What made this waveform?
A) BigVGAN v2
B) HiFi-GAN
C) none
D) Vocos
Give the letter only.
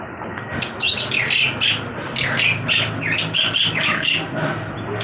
C